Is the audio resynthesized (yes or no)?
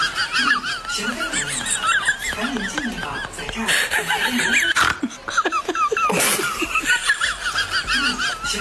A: no